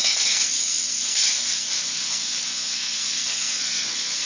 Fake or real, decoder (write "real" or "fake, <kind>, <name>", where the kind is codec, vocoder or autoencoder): fake, codec, SNAC